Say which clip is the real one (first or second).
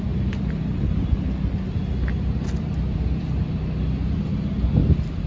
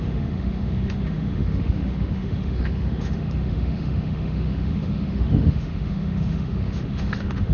first